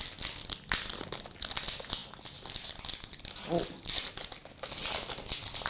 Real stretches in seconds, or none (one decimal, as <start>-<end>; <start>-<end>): 0.0-5.7